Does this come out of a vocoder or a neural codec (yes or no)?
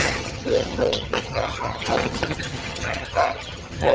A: yes